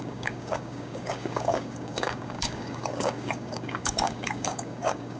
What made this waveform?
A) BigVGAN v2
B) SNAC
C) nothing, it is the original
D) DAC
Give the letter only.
D